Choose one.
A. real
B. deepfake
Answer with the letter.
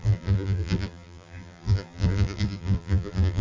B